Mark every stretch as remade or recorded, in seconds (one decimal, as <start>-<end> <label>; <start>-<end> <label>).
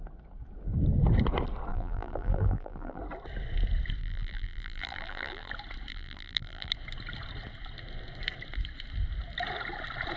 0.0-1.7 recorded; 1.7-3.0 remade; 3.0-4.0 recorded; 4.0-5.5 remade; 5.5-5.9 recorded; 5.9-6.7 remade; 6.7-10.2 recorded